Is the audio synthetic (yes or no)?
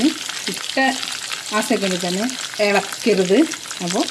no